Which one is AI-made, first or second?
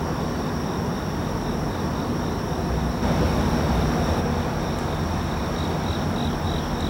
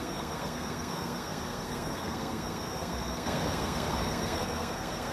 second